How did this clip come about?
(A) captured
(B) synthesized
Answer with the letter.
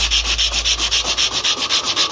A